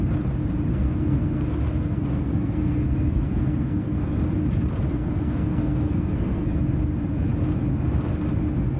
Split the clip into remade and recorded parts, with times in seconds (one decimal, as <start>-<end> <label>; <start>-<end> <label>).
0.0-0.7 recorded; 0.7-4.2 remade; 4.2-4.9 recorded; 4.9-6.6 remade; 6.6-8.8 recorded